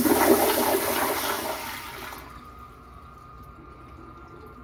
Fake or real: real